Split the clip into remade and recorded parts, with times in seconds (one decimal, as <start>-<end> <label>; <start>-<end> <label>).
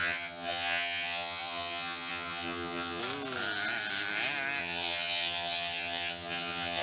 0.0-3.0 remade; 3.0-4.6 recorded; 4.6-6.8 remade